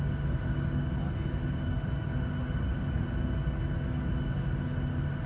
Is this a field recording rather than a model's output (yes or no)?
yes